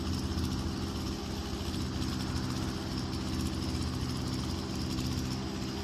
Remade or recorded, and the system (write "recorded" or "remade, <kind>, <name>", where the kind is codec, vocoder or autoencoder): recorded